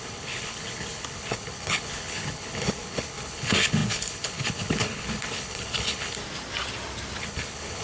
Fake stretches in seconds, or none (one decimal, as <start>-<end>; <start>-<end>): 0.0-6.2; 7.2-7.8